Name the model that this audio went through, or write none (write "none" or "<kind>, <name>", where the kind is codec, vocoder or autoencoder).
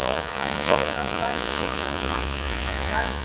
vocoder, Vocos